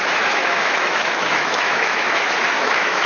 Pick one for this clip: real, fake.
fake